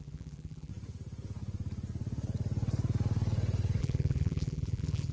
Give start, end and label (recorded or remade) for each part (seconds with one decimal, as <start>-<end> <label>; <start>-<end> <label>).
0.0-0.7 remade; 0.7-3.8 recorded; 3.8-5.1 remade